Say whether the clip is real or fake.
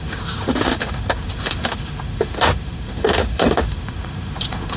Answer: fake